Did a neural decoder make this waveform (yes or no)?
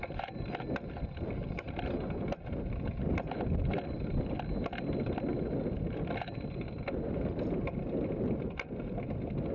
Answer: no